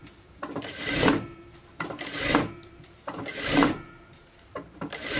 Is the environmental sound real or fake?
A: fake